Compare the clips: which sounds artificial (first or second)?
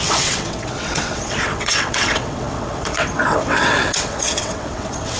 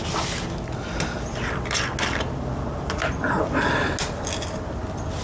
first